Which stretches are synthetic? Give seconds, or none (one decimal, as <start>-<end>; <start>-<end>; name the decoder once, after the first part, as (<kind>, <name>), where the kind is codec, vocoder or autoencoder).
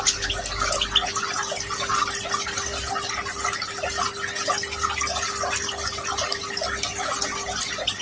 none